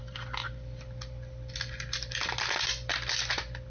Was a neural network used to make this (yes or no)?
no